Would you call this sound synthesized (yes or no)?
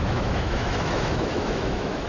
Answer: yes